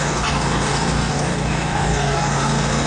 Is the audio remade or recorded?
remade